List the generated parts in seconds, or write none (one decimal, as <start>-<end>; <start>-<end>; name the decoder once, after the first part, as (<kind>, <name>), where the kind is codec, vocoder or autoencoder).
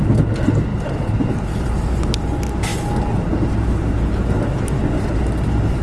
0.7-2.0 (vocoder, BigVGAN v2)